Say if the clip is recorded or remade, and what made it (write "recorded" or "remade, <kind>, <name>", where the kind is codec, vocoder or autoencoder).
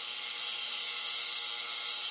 recorded